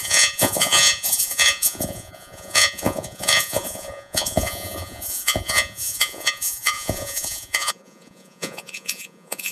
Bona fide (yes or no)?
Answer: no